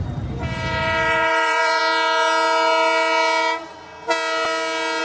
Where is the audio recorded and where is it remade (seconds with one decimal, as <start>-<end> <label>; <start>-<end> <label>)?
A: 0.0-1.8 remade; 1.8-5.0 recorded